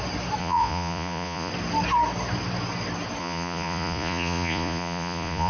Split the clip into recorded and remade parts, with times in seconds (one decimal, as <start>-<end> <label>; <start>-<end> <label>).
0.0-0.4 recorded; 0.4-1.5 remade; 1.5-3.2 recorded; 3.2-5.5 remade